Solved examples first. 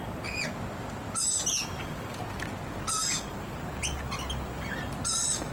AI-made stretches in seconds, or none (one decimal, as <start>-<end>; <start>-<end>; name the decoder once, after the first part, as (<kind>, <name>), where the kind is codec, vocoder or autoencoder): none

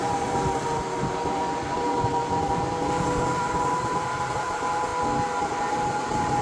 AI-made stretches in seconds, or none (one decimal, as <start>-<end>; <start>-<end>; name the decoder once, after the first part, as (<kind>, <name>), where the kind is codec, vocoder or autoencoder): 0.0-4.9 (vocoder, BigVGAN v2); 5.7-6.4

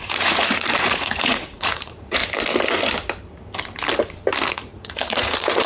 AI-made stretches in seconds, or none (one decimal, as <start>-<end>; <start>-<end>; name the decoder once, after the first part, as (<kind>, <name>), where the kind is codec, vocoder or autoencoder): 0.0-2.2 (vocoder, Vocos); 4.5-5.7

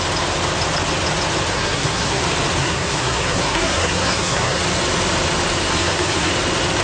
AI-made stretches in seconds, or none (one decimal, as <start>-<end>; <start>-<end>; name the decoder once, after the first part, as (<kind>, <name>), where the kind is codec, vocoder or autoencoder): 1.5-2.2 (codec, SNAC); 2.6-4.6; 5.7-6.3

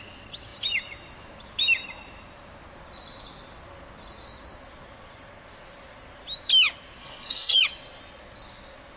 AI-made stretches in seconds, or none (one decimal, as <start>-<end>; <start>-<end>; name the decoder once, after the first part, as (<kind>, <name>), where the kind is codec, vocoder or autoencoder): 7.0-7.6 (codec, SNAC)

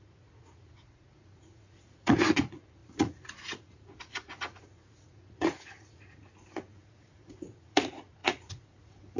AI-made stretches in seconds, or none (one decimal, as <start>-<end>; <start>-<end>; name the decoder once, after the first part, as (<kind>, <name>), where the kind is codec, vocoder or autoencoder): 0.0-9.2 (vocoder, Vocos)

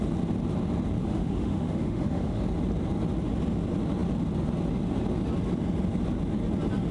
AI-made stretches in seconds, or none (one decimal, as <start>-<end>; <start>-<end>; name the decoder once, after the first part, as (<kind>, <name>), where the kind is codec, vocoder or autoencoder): 1.0-2.4 (autoencoder, DAC-VAE)